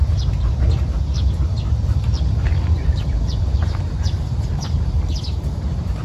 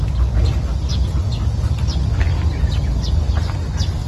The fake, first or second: first